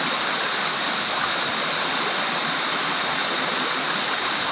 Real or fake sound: real